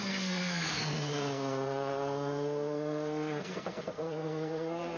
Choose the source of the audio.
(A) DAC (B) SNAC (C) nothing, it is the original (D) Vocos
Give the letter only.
B